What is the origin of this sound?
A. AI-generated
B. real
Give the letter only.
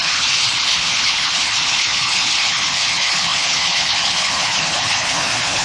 A